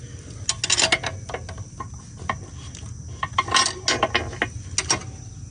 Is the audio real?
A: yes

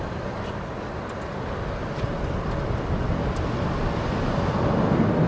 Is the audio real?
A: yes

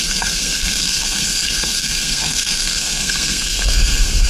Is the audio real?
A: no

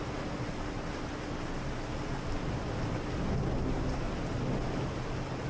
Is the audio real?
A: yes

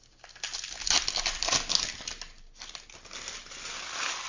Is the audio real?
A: yes